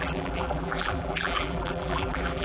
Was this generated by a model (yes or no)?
yes